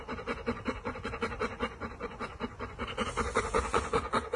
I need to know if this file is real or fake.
fake